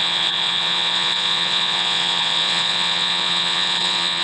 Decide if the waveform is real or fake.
fake